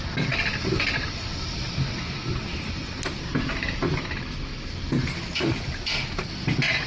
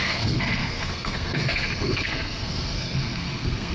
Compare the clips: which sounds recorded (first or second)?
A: first